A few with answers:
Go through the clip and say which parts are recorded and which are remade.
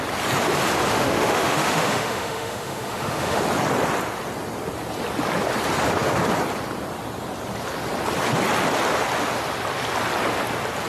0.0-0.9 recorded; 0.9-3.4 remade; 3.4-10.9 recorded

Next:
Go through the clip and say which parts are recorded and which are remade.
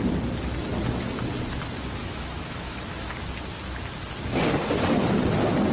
0.0-2.0 recorded; 2.0-3.1 remade; 3.1-5.7 recorded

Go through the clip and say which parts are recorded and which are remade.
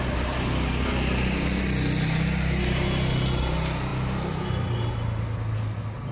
0.0-6.1 recorded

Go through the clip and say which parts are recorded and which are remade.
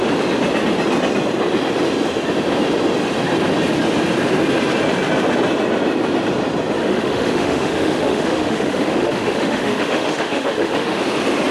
0.0-6.8 recorded; 6.8-11.0 remade; 11.0-11.5 recorded